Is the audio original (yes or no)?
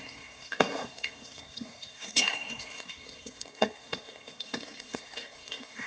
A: no